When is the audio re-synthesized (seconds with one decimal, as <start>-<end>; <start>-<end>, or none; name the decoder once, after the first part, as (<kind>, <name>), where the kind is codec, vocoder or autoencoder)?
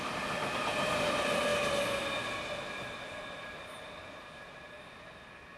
none